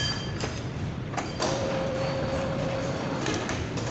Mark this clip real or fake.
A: fake